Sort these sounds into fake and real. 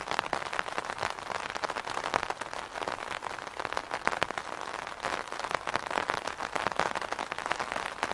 real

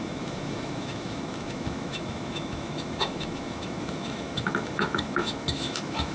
fake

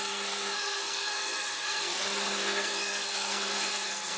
fake